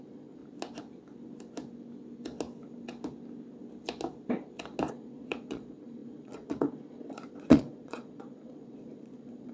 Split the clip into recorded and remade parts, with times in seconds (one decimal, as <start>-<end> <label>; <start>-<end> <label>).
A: 0.0-0.4 remade; 0.4-4.9 recorded; 4.9-9.5 remade